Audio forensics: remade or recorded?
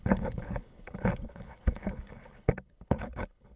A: remade